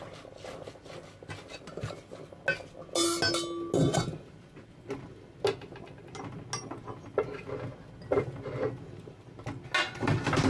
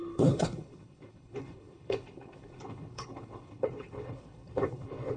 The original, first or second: first